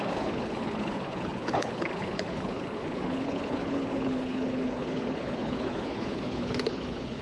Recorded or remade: remade